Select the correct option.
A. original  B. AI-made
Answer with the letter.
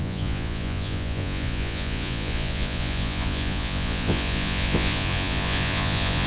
B